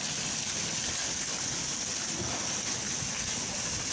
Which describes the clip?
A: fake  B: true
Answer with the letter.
B